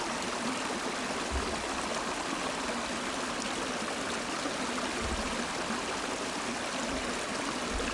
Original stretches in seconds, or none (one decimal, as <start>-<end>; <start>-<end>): 0.0-7.9

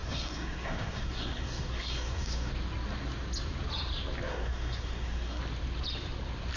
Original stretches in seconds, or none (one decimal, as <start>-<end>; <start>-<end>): 2.5-4.3; 5.4-6.6

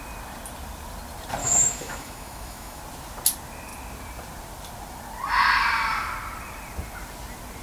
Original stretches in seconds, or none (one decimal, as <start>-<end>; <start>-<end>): 0.0-1.4; 2.8-7.6

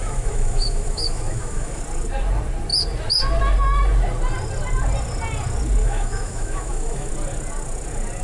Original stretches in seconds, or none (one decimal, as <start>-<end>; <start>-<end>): 1.8-5.8; 7.1-8.2

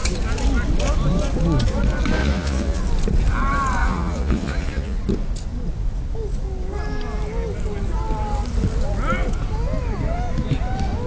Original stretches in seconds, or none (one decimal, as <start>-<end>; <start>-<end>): 0.0-2.2; 2.8-3.8; 5.0-11.1

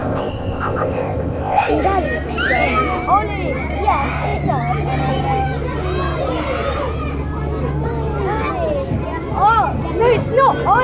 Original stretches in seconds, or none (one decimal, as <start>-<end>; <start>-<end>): 1.7-10.8

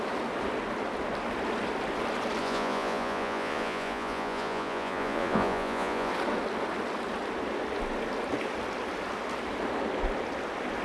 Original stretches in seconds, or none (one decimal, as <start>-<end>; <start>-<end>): 0.0-2.4; 6.1-10.8

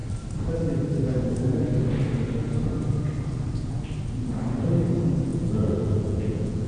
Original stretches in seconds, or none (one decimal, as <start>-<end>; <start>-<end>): 0.0-5.3